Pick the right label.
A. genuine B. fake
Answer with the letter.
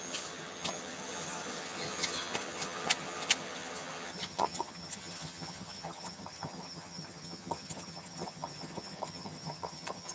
B